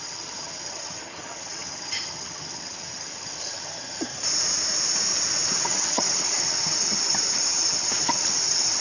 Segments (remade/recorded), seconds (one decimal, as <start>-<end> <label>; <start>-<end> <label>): 0.0-4.1 remade; 4.1-5.5 recorded; 5.5-8.8 remade